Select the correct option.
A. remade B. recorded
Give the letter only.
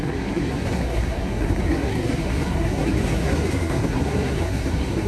A